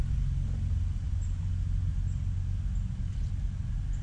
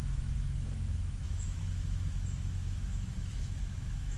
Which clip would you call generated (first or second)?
second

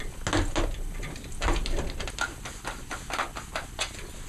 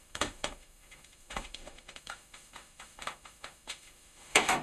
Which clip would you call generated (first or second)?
second